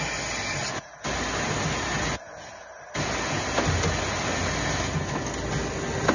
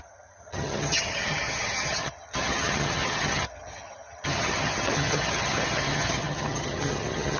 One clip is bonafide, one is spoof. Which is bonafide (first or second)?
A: first